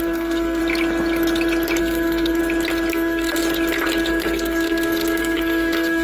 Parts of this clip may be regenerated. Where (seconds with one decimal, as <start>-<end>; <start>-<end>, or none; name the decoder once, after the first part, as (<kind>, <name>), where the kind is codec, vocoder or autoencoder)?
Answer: 0.0-0.6 (codec, SNAC); 1.8-2.4; 2.9-3.4; 4.1-6.0